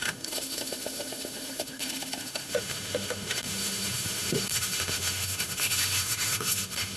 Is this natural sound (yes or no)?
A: no